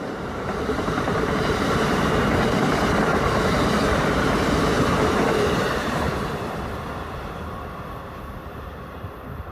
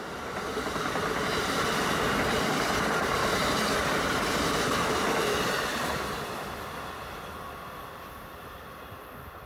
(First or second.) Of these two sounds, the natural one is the second